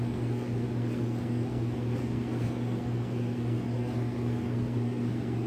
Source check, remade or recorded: remade